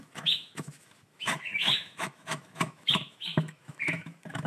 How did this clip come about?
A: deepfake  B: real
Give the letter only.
A